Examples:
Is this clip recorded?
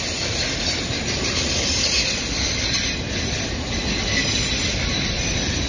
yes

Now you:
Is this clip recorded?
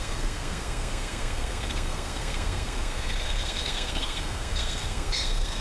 no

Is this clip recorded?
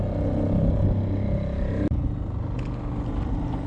yes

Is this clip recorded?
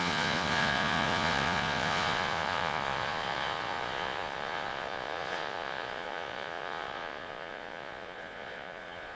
no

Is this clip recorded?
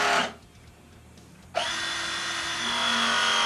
yes